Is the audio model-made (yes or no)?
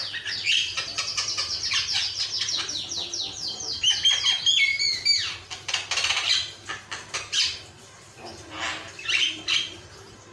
no